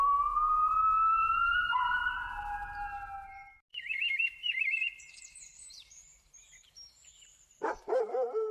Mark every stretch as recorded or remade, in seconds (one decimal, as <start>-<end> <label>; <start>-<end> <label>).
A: 0.0-3.7 recorded; 3.7-8.5 remade